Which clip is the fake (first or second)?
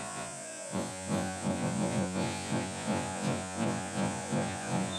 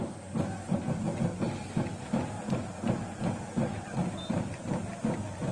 first